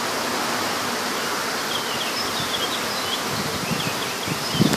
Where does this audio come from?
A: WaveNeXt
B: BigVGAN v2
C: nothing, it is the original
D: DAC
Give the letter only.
B